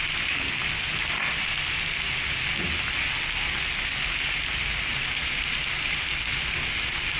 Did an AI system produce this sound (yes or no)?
no